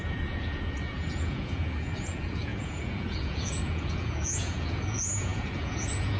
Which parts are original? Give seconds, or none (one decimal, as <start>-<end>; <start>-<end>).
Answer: none